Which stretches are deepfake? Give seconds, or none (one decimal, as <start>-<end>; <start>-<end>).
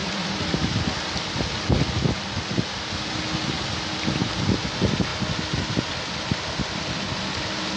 none